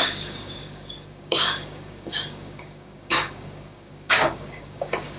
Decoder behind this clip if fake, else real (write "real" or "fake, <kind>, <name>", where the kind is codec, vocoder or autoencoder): fake, codec, DAC